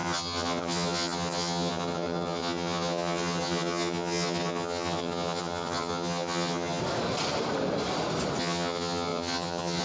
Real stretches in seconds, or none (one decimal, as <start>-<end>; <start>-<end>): 6.8-8.4